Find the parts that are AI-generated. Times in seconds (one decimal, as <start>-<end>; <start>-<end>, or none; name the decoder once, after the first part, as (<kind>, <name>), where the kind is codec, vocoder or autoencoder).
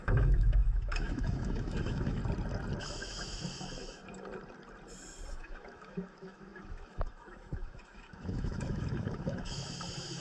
0.0-2.2 (autoencoder, DAC-VAE); 2.8-4.0; 5.3-10.2